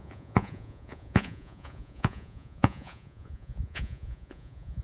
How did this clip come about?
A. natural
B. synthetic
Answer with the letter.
B